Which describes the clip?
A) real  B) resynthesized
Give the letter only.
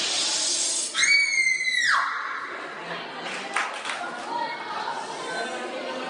A